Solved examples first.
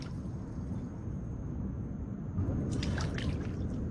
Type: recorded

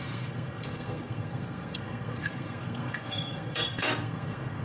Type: remade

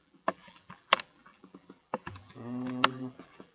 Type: remade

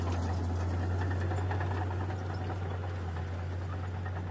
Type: recorded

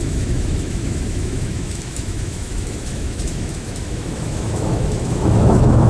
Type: remade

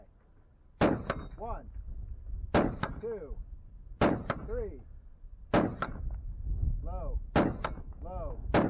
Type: recorded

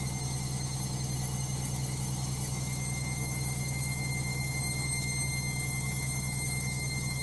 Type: remade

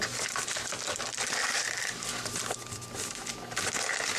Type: recorded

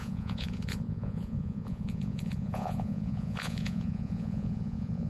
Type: remade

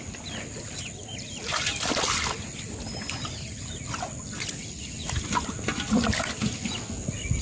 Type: recorded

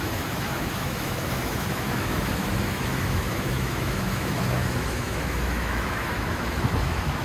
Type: remade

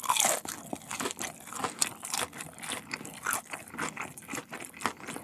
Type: recorded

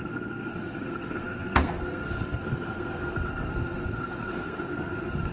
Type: remade